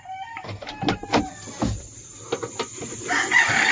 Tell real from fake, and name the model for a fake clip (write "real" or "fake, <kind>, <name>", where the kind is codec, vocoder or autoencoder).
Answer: real